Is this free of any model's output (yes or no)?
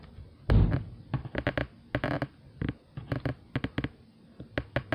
yes